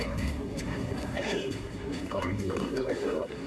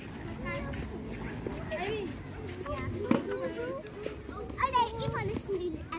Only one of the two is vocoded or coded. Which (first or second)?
first